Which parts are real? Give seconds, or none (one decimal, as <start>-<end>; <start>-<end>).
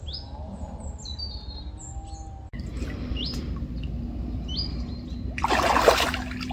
0.0-6.5